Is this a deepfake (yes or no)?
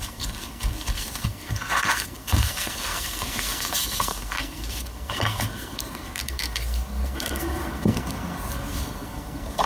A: yes